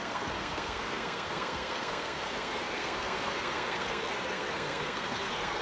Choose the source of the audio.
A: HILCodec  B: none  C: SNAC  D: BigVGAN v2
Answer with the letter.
C